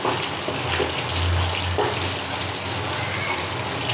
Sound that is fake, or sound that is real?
real